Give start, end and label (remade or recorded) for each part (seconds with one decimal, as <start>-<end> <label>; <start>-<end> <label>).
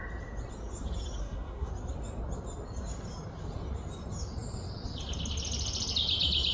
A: 0.0-1.2 recorded; 1.2-1.7 remade; 1.7-6.5 recorded